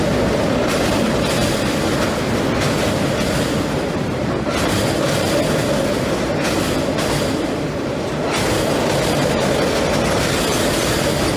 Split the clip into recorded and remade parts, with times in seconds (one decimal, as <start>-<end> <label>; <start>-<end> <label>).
0.0-11.4 recorded